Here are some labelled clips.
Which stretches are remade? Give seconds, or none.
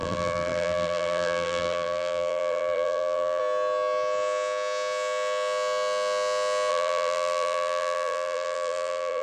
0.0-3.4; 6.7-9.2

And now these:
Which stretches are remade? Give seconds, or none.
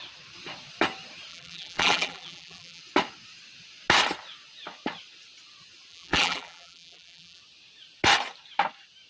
1.3-2.8; 5.9-7.4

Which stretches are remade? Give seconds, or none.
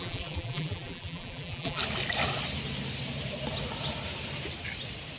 0.0-1.8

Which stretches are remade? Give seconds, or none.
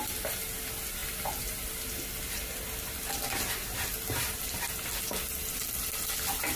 none